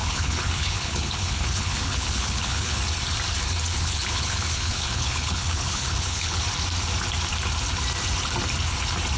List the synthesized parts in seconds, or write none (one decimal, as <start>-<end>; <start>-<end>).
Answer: 0.0-2.8; 3.7-6.4